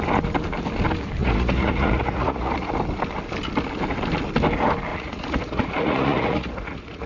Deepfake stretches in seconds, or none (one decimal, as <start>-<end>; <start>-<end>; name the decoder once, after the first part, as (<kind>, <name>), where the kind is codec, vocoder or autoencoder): 1.2-2.7 (vocoder, Vocos); 4.9-7.1